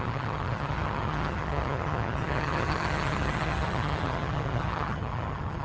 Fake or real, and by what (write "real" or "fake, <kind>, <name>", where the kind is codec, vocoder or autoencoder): fake, vocoder, HiFi-GAN